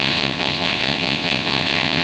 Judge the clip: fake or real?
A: fake